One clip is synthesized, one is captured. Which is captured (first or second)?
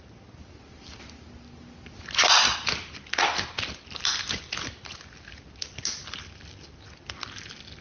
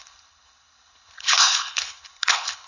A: first